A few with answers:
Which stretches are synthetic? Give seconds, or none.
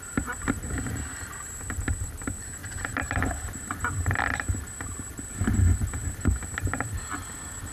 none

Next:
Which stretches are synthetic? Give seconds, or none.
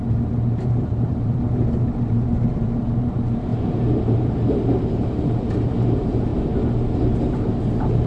0.0-6.3; 7.3-8.1